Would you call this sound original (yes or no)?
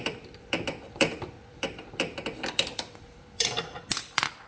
no